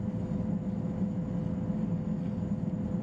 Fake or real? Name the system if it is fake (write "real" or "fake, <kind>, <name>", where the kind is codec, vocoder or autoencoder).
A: real